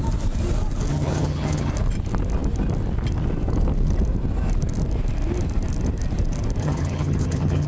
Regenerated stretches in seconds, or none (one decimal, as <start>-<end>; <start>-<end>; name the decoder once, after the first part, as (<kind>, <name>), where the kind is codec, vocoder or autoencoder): 0.9-1.7 (vocoder, HiFi-GAN); 6.6-7.7